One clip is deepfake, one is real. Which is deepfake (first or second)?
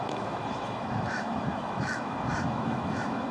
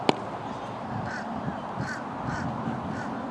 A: first